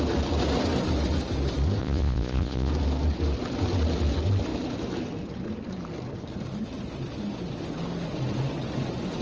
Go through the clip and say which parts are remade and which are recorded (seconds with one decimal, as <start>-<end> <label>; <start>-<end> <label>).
0.0-1.8 recorded; 1.8-2.7 remade; 2.7-9.2 recorded